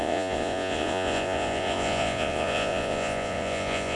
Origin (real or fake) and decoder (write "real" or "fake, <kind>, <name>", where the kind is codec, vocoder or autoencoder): fake, vocoder, Vocos